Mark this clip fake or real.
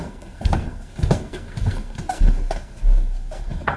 fake